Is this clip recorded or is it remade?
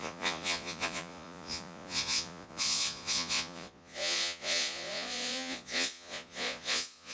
remade